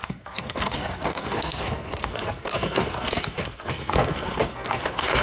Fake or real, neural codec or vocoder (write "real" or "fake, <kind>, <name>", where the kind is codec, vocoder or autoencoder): fake, codec, SNAC